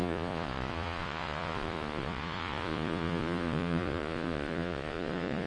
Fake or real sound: fake